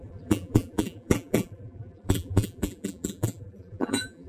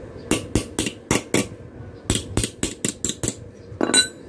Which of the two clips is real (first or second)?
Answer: second